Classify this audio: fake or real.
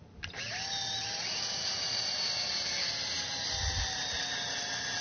real